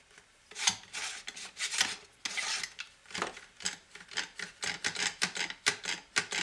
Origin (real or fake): real